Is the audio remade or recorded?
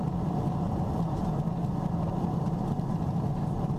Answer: recorded